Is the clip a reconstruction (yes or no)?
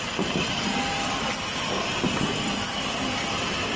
no